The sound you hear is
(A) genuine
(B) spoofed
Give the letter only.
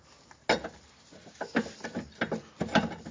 A